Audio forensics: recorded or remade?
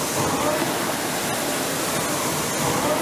recorded